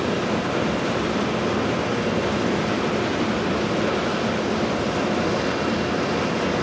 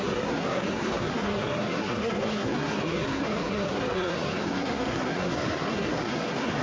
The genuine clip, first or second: first